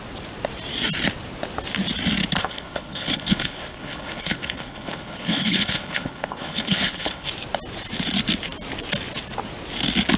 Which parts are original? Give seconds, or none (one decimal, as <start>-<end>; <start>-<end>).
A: 0.0-2.4; 7.3-10.2